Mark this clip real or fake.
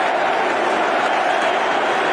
real